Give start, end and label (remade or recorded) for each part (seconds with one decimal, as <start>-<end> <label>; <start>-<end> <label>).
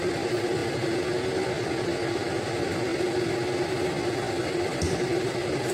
0.0-0.6 remade; 0.6-2.4 recorded; 2.4-2.9 remade; 2.9-4.4 recorded; 4.4-5.7 remade